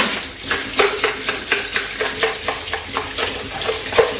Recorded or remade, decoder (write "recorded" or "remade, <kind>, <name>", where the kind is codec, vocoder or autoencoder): recorded